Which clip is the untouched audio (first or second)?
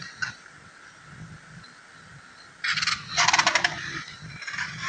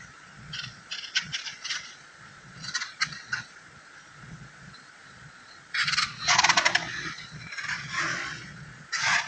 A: first